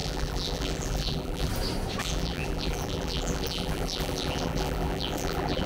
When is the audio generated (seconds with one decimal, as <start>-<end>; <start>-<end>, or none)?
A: 0.0-1.5; 2.0-5.7